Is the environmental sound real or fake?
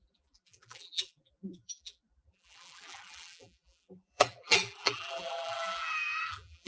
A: fake